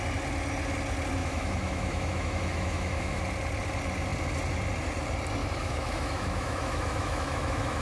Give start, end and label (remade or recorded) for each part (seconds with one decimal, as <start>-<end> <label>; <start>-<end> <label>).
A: 0.0-1.2 recorded; 1.2-3.2 remade; 3.2-5.4 recorded; 5.4-7.8 remade